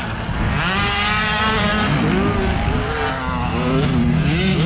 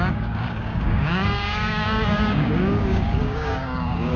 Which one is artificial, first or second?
second